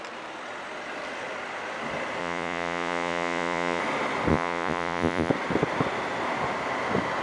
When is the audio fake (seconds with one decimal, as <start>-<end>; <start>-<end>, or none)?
2.2-3.8; 4.3-5.3

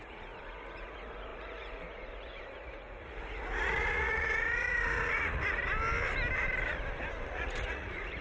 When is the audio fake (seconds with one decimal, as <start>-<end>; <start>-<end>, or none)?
0.0-5.6; 7.3-8.2

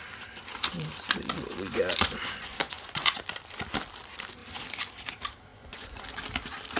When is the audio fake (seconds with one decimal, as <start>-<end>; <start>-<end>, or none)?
1.5-3.2; 5.5-6.0

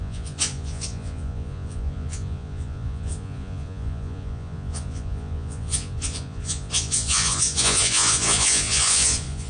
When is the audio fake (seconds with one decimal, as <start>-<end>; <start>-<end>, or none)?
0.0-9.5

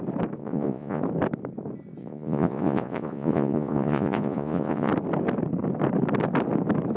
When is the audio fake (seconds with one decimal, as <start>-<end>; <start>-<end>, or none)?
0.4-1.0; 2.0-4.9

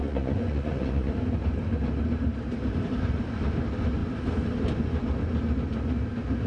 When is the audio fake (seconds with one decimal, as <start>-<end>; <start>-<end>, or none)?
0.0-1.1

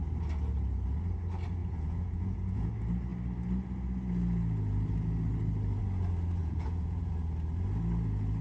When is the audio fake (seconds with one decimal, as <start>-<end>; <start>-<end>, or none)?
1.6-2.7; 6.4-7.1